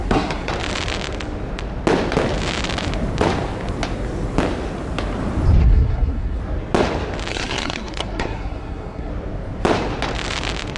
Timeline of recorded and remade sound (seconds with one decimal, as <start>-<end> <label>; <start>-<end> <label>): 0.0-0.5 remade; 0.5-5.6 recorded; 5.6-6.4 remade; 6.4-7.3 recorded; 7.3-9.1 remade; 9.1-10.8 recorded